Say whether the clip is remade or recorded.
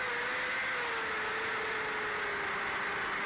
recorded